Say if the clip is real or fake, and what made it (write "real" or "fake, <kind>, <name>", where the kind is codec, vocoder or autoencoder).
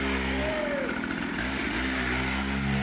real